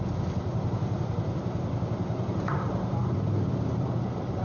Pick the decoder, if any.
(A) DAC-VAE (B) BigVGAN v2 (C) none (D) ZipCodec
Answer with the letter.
C